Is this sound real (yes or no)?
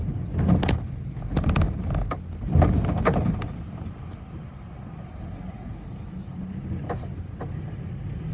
yes